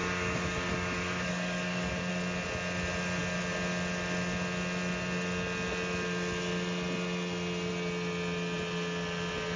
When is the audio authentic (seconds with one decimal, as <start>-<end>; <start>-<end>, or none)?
2.1-9.6